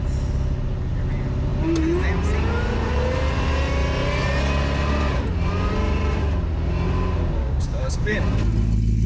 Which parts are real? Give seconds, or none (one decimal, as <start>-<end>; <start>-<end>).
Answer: 0.0-7.4; 8.2-9.1